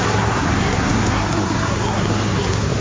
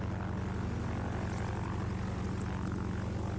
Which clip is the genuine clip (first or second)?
second